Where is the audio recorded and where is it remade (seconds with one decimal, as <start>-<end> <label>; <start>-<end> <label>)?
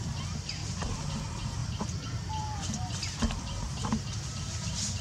0.0-5.0 recorded